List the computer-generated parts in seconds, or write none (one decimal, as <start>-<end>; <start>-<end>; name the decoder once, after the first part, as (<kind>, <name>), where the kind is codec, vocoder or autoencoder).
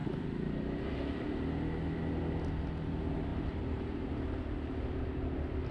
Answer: 3.3-4.1 (vocoder, BigVGAN v2)